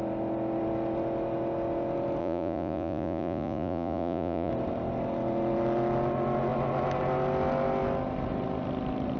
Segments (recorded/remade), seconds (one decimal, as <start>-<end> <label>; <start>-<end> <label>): 0.0-2.2 recorded; 2.2-4.5 remade; 4.5-9.2 recorded